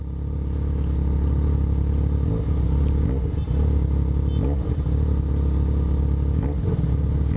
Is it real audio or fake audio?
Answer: real